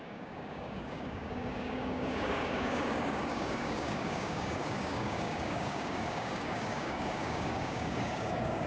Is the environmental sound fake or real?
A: fake